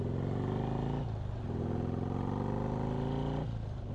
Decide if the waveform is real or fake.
real